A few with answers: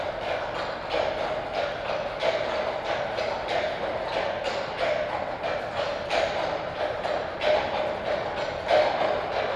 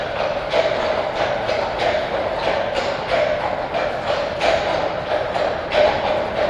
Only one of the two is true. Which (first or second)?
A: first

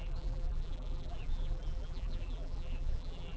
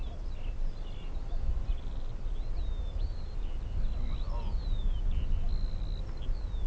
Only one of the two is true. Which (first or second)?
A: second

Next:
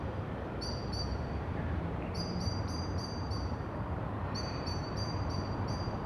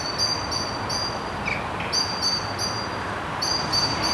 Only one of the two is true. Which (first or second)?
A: second